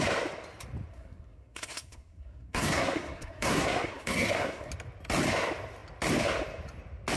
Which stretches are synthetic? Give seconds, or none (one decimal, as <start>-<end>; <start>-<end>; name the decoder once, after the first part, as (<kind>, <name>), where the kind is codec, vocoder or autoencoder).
0.9-4.7 (codec, SNAC)